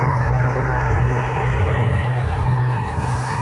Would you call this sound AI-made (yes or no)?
yes